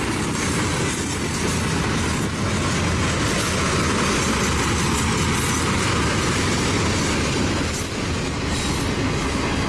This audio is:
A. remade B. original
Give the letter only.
B